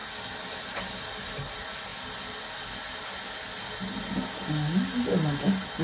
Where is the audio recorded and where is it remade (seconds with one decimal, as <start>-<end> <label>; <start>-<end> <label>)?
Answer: 0.0-5.8 recorded